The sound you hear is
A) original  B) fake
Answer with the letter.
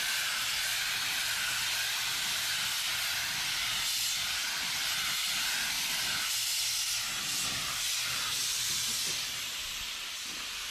A